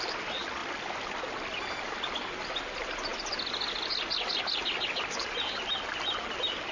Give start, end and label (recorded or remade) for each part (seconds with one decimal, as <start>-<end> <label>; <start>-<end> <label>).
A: 0.0-6.7 recorded